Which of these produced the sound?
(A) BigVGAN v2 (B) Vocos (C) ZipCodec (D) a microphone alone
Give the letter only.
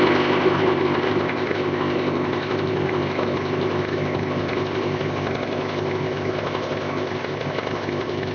C